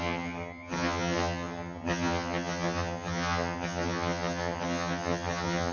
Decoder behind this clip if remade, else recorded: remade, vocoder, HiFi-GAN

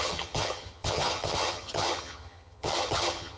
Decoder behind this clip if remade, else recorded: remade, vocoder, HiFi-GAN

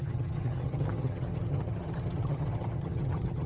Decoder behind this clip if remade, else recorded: remade, vocoder, HiFi-GAN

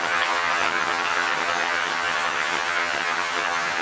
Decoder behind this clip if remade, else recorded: remade, vocoder, HiFi-GAN